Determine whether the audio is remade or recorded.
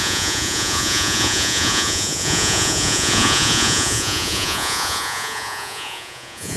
remade